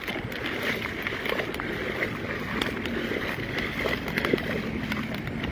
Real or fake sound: real